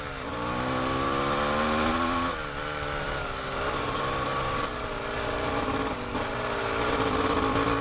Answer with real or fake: real